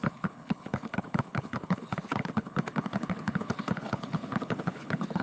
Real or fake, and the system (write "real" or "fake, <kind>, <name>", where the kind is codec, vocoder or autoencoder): fake, codec, HILCodec